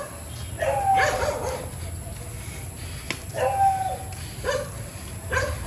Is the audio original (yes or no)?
yes